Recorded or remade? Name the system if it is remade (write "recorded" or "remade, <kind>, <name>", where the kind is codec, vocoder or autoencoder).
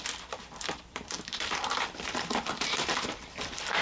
remade, vocoder, BigVGAN v2